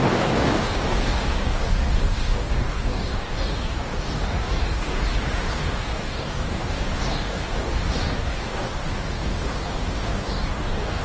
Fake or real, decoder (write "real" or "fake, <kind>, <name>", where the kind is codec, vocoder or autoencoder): fake, codec, DAC